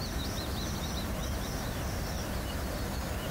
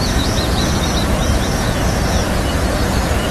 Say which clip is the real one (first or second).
first